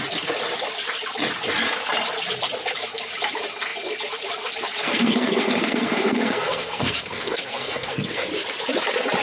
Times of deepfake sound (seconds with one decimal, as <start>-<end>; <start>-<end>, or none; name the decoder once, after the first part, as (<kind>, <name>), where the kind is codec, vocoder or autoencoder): 4.8-8.3 (codec, SNAC)